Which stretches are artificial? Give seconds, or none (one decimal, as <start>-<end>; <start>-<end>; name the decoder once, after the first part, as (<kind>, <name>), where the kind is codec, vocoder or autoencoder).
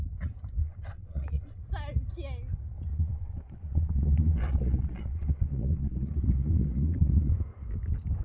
0.6-1.6 (vocoder, Vocos); 2.9-7.3